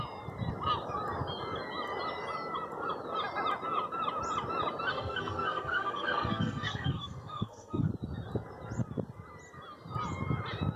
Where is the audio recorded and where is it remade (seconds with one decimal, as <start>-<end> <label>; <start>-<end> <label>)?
0.0-4.9 recorded; 4.9-7.9 remade; 7.9-10.8 recorded